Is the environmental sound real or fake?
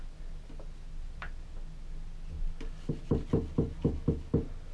real